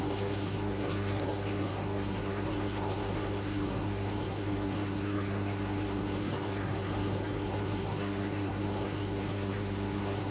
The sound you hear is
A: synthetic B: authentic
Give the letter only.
A